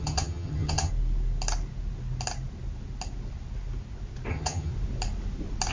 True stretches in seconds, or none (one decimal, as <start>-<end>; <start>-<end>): 0.9-4.3; 4.7-5.7